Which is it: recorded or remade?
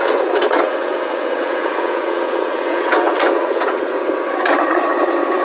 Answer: remade